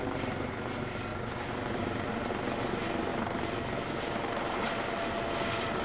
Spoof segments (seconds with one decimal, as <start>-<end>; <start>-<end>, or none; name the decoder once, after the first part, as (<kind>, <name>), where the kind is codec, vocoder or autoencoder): none